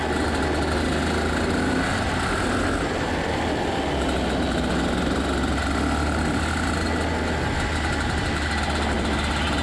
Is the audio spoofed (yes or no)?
no